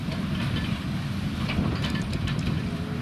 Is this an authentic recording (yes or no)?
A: yes